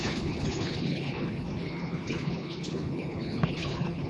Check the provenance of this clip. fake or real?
fake